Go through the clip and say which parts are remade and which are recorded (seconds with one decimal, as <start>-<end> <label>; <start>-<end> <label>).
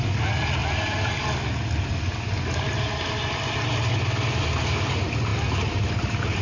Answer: 0.0-0.6 recorded; 0.6-1.1 remade; 1.1-5.3 recorded; 5.3-6.0 remade; 6.0-6.4 recorded